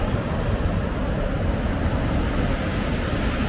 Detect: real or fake real